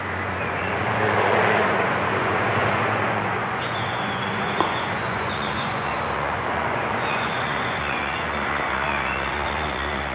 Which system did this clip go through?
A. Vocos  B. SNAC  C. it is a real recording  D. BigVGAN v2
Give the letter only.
A